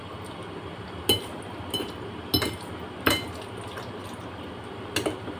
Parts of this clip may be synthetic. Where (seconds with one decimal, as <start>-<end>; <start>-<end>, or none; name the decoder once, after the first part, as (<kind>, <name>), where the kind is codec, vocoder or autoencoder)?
none